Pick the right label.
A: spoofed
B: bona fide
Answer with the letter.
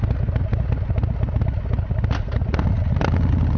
B